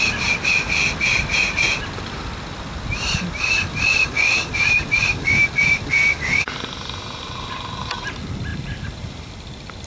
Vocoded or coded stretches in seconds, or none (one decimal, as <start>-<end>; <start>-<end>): 3.9-5.5; 8.5-9.3

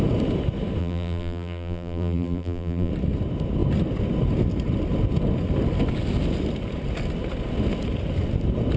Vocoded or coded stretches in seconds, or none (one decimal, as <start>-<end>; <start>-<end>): 0.8-2.9

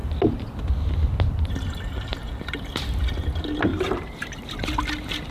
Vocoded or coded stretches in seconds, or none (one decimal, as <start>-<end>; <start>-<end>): 2.1-3.2; 3.7-4.6

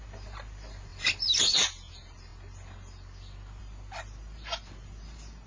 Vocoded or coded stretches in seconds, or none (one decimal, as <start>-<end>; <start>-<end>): 0.0-2.3; 3.6-5.5

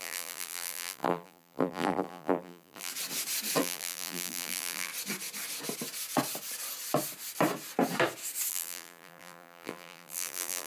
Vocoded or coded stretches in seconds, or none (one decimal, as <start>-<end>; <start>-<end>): 0.0-2.9; 3.6-4.9; 8.5-10.7

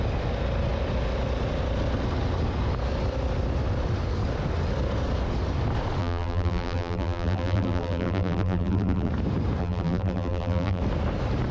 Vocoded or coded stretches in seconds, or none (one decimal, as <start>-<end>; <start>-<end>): 6.0-9.1; 9.6-10.8

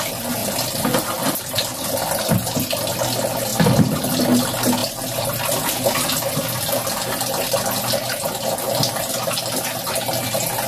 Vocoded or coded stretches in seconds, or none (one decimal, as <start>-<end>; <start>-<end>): 0.4-1.4; 3.5-4.1